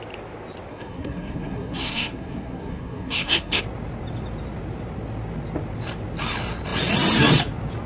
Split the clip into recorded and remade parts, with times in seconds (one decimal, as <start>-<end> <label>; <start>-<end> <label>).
0.0-0.7 recorded; 0.7-3.6 remade; 3.6-7.9 recorded